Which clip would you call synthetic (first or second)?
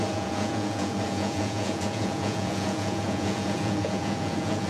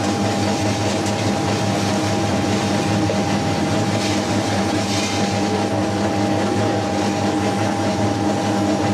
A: first